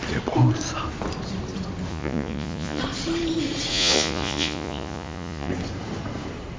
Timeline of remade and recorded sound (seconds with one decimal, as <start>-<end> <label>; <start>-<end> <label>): 0.0-1.9 recorded; 1.9-2.8 remade; 2.8-3.7 recorded; 3.7-5.5 remade; 5.5-6.6 recorded